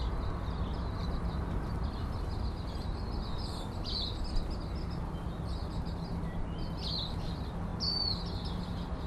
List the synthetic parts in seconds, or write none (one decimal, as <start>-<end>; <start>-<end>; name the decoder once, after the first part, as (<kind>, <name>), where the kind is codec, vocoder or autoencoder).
1.0-4.3 (vocoder, BigVGAN v2); 7.7-8.6